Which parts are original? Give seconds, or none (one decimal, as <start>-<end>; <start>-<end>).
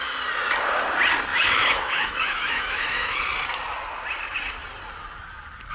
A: 0.0-1.3; 3.2-5.7